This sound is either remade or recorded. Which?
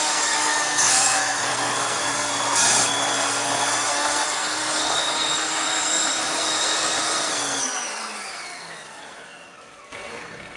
remade